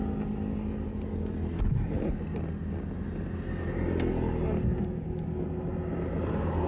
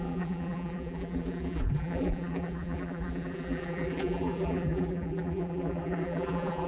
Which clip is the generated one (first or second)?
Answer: second